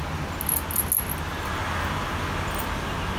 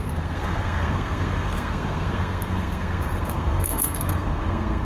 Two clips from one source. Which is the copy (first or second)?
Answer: second